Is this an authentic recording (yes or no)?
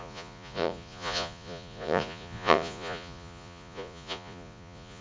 no